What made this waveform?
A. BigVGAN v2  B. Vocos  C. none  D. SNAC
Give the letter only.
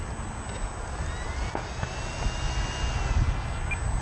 C